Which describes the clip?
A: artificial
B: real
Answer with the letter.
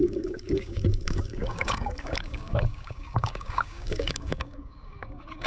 A